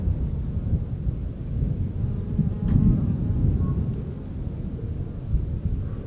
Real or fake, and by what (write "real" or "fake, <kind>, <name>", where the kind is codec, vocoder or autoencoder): real